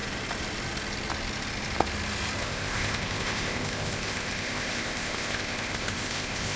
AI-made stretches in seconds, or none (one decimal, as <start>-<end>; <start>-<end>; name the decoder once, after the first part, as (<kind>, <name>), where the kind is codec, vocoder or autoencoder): 2.4-6.6 (codec, ZipCodec)